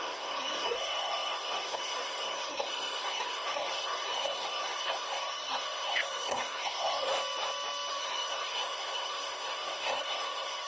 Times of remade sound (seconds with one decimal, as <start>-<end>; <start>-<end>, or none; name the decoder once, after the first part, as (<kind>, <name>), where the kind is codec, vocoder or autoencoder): 0.0-7.1 (codec, SNAC); 7.9-10.7